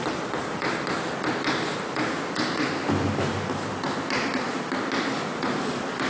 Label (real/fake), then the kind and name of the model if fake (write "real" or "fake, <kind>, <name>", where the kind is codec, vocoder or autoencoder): real